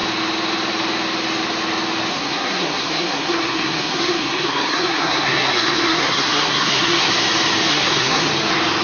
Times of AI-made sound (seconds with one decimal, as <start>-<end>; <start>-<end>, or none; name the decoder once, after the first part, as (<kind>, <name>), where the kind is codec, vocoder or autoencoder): 2.1-7.1 (codec, SNAC); 7.7-8.3